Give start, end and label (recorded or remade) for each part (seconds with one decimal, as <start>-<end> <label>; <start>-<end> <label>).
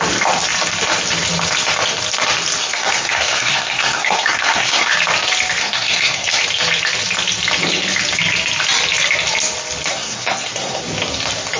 0.0-2.6 recorded; 2.6-4.9 remade; 4.9-5.6 recorded; 5.6-6.4 remade; 6.4-9.9 recorded; 9.9-10.8 remade; 10.8-11.6 recorded